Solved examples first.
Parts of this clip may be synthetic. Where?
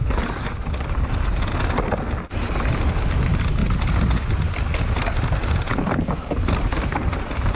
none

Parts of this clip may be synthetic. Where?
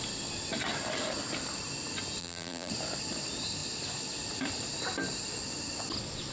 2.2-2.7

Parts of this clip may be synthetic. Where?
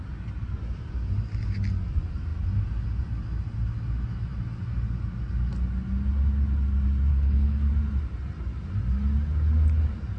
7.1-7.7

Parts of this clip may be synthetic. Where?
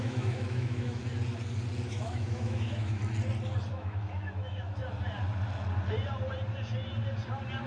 0.0-1.0; 1.9-3.0; 3.7-4.8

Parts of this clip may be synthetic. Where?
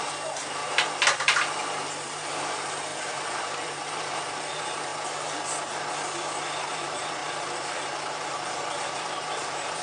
0.0-0.6; 2.0-4.9; 6.6-9.8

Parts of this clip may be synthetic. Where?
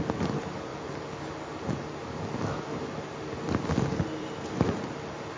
none